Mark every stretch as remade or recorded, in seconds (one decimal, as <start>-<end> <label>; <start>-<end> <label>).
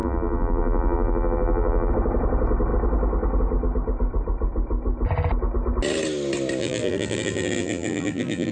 0.0-1.9 remade; 1.9-6.6 recorded; 6.6-8.5 remade